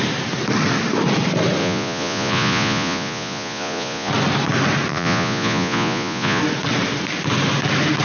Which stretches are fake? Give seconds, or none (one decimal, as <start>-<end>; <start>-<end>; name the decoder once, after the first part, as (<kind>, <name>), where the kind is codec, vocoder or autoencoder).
1.6-4.1 (vocoder, Vocos); 4.9-6.4